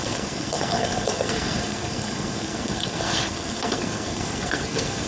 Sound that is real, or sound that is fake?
fake